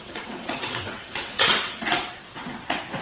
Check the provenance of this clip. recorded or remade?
remade